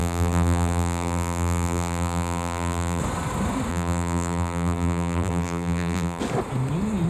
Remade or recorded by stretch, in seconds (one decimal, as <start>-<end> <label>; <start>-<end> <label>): 0.0-3.0 remade; 3.0-3.7 recorded; 3.7-6.2 remade; 6.2-7.1 recorded